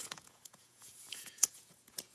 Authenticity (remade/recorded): remade